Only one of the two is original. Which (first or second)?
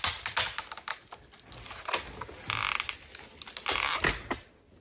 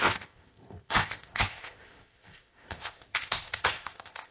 first